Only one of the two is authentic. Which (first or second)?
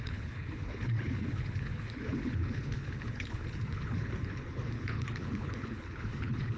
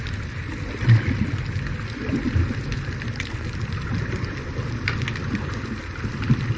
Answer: second